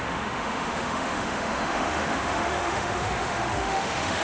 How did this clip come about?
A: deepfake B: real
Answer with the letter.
A